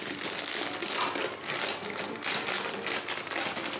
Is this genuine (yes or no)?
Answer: yes